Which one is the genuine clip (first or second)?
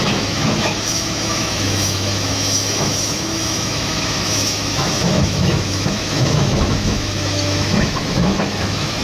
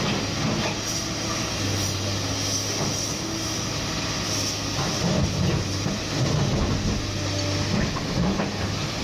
second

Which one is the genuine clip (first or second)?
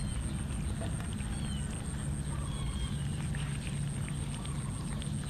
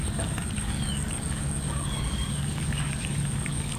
first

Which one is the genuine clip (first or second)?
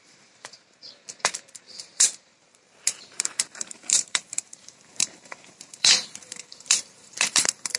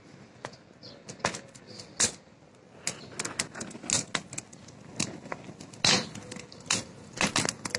second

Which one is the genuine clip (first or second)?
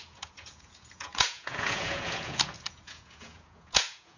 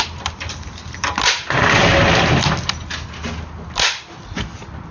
second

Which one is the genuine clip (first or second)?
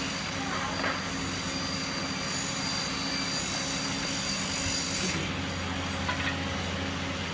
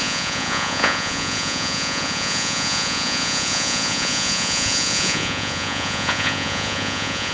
first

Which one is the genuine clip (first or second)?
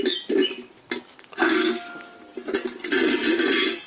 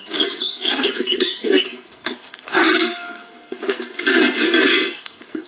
first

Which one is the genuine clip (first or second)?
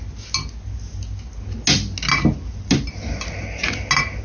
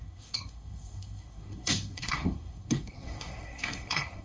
first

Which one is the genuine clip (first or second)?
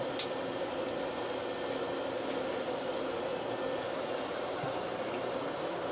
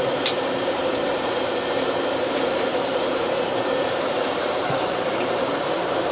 first